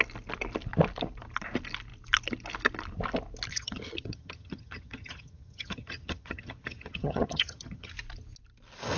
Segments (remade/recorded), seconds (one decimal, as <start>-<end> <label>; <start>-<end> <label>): 0.0-3.5 recorded; 3.5-7.9 remade; 7.9-9.0 recorded